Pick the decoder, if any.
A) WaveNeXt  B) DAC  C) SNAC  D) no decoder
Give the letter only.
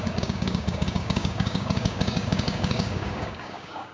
B